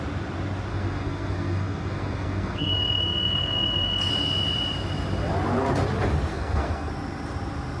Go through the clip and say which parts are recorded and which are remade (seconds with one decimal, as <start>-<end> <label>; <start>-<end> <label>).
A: 0.0-0.7 recorded; 0.7-4.1 remade; 4.1-6.3 recorded; 6.3-6.9 remade; 6.9-7.8 recorded